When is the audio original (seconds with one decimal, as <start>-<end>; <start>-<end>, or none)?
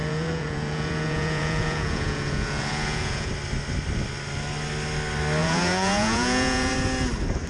3.3-5.4; 6.7-7.5